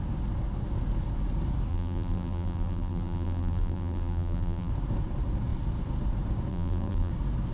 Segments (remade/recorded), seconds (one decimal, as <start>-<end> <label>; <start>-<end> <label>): 0.0-1.7 recorded; 1.7-4.7 remade; 4.7-6.5 recorded; 6.5-7.1 remade; 7.1-7.5 recorded